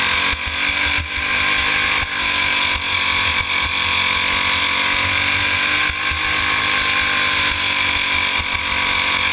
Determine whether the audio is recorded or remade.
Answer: recorded